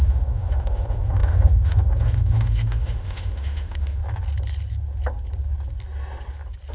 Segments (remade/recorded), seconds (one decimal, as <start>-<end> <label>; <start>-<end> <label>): 0.0-4.0 remade; 4.0-6.7 recorded